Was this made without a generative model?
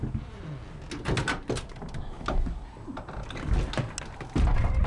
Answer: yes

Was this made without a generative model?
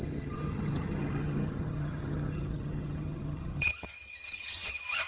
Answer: no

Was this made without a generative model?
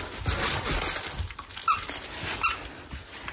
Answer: yes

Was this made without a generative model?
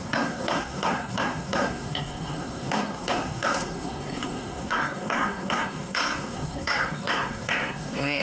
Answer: no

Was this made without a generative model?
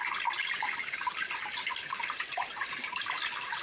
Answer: yes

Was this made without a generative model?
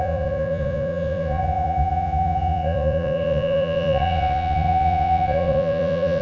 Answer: no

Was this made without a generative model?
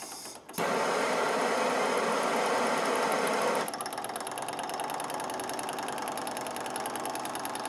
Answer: yes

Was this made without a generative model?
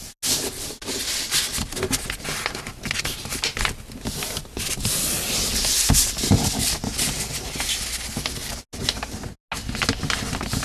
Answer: yes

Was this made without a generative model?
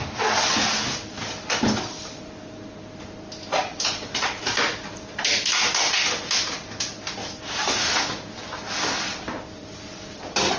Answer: yes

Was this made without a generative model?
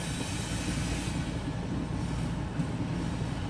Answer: yes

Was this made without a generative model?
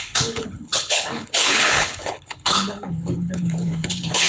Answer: no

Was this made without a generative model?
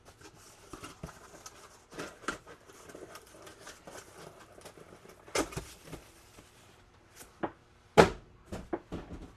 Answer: yes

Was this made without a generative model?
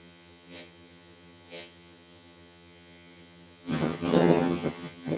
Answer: no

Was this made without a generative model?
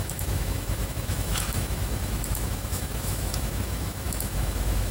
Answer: no